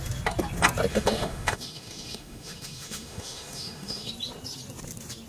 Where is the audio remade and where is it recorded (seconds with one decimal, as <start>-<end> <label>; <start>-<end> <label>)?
0.0-0.9 recorded; 0.9-4.1 remade; 4.1-5.3 recorded